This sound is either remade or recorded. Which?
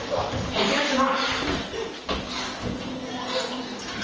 recorded